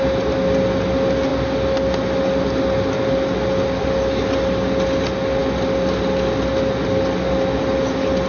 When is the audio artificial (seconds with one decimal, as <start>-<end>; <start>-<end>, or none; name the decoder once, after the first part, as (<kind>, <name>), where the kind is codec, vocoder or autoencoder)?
none